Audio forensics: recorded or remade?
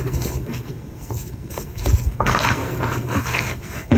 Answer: remade